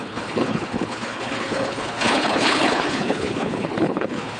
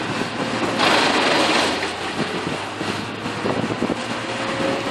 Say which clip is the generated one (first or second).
first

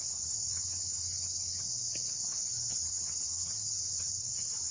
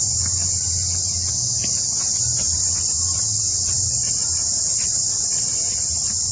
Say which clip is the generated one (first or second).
first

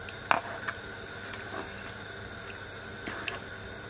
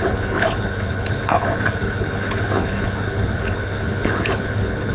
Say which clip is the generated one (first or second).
second